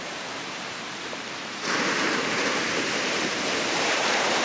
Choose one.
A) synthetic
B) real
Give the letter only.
A